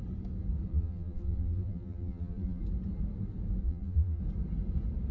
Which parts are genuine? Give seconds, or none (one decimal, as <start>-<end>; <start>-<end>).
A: 0.0-0.7; 2.6-3.6; 4.2-5.1